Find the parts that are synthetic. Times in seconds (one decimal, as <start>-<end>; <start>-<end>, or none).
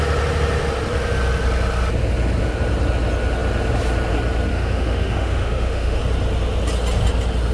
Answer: 4.5-6.0